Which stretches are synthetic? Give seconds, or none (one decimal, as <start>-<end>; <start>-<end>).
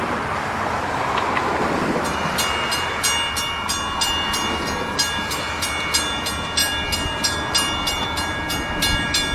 none